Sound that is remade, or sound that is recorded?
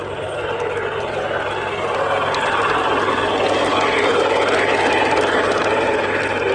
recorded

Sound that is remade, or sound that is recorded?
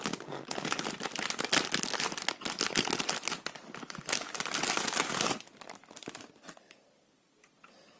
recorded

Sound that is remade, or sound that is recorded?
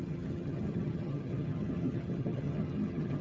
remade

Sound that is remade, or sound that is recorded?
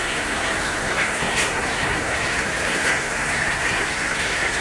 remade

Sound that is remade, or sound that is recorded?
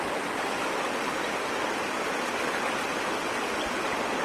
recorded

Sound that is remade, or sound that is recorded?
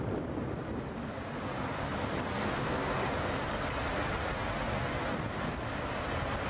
recorded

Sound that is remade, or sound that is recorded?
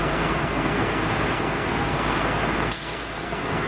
remade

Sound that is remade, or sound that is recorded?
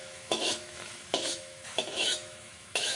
remade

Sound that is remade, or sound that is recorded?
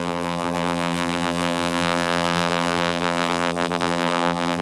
remade